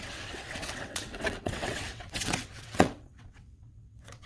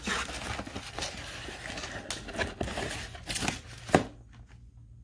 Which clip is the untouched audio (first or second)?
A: second